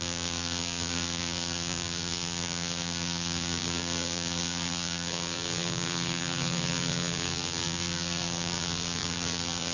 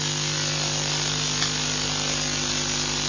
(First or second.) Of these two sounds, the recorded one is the second